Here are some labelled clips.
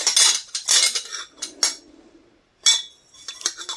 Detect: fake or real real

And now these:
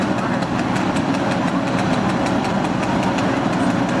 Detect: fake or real fake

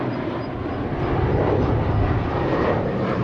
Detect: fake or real real